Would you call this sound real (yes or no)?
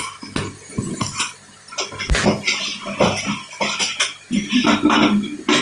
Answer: yes